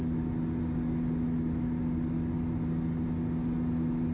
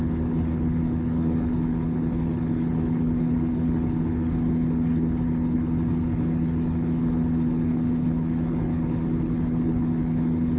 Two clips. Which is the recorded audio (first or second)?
first